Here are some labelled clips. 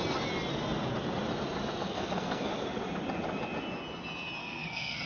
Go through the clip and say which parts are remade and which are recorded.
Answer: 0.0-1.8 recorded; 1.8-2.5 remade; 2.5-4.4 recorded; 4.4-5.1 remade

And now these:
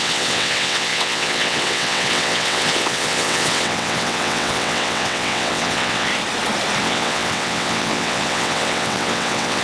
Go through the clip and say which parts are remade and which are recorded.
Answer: 0.0-6.1 remade; 6.1-6.8 recorded; 6.8-9.6 remade

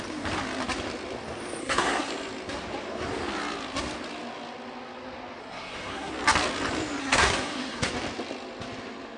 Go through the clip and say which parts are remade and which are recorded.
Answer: 0.0-1.6 recorded; 1.6-2.1 remade; 2.1-5.4 recorded; 5.4-6.1 remade; 6.1-7.0 recorded; 7.0-7.9 remade; 7.9-9.2 recorded

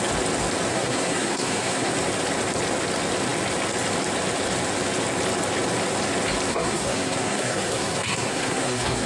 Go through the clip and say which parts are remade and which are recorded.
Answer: 0.0-0.7 recorded; 0.7-1.9 remade; 1.9-6.5 recorded; 6.5-9.1 remade